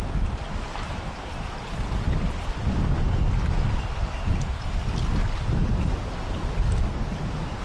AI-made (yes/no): no